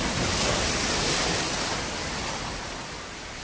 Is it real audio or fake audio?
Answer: real